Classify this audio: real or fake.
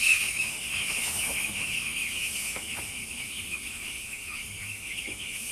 fake